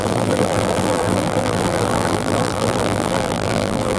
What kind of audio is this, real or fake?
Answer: fake